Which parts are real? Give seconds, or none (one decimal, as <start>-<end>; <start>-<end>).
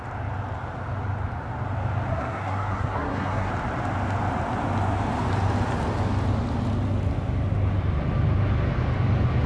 0.0-2.1; 3.5-9.5